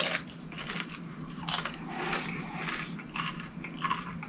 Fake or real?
real